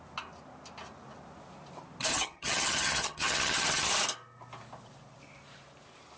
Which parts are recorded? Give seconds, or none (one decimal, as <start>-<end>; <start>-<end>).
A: 0.0-2.1; 3.9-6.2